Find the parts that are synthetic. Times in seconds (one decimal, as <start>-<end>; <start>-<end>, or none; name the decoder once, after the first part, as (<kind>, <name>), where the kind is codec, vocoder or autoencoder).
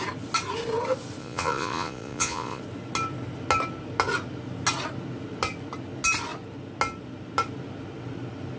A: 1.2-2.6 (vocoder, Vocos)